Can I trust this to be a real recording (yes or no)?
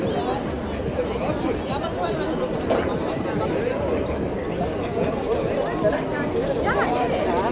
yes